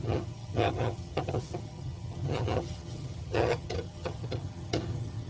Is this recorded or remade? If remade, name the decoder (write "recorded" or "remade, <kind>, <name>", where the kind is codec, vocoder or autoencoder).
remade, vocoder, HiFi-GAN